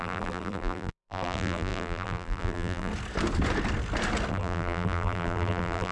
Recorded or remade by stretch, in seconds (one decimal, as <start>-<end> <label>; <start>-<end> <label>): 0.0-2.9 remade; 2.9-4.3 recorded; 4.3-5.9 remade